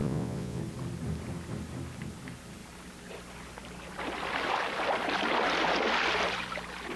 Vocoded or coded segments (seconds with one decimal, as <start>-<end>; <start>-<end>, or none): 0.0-0.6